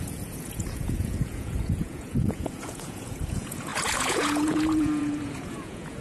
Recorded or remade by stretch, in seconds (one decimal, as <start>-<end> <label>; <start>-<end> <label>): 0.0-6.0 remade

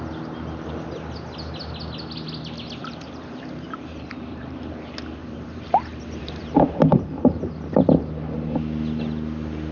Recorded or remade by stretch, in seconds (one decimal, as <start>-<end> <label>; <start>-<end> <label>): 0.0-2.8 recorded; 2.8-4.7 remade; 4.7-5.2 recorded; 5.2-8.0 remade; 8.0-9.7 recorded

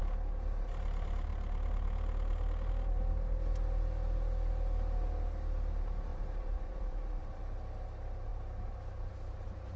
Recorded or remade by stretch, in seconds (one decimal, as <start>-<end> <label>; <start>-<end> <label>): 0.0-6.1 recorded; 6.1-7.4 remade; 7.4-9.8 recorded

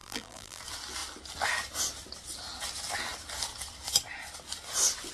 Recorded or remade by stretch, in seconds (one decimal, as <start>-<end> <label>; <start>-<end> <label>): 0.0-0.6 remade; 0.6-5.1 recorded

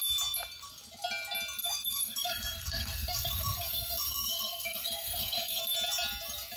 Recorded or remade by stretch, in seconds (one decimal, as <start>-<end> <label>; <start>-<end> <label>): 0.0-1.6 recorded; 1.6-5.6 remade; 5.6-6.6 recorded